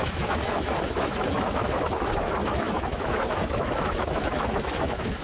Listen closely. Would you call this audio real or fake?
fake